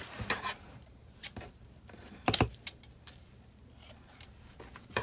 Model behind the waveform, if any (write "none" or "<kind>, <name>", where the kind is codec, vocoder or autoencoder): vocoder, BigVGAN v2